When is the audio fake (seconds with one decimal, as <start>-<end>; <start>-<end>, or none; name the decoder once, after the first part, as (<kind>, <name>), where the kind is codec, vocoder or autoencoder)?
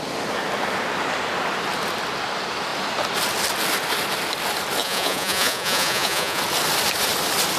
4.8-6.4 (vocoder, Vocos)